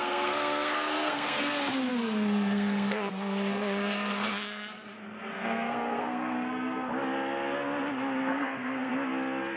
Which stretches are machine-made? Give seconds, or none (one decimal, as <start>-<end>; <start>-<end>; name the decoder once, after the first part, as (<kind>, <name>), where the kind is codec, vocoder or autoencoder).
0.0-1.4 (codec, SNAC); 1.9-6.9; 8.3-8.9